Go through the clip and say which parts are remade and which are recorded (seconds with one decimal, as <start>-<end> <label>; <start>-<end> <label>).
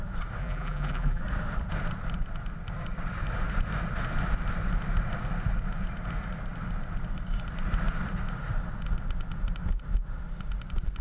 0.0-0.4 recorded; 0.4-1.2 remade; 1.2-11.0 recorded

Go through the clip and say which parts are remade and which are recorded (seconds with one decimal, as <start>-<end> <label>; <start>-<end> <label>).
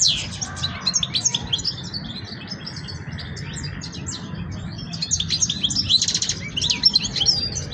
0.0-7.7 recorded